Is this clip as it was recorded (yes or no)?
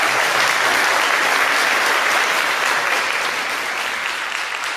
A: yes